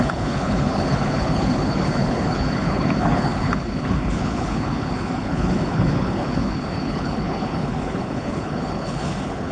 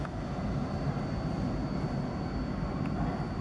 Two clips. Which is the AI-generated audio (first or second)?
first